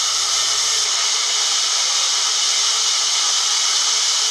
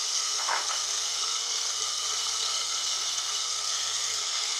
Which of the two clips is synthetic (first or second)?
second